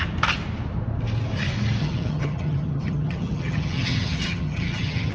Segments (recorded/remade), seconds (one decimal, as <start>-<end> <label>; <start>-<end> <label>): 0.0-1.8 recorded; 1.8-5.1 remade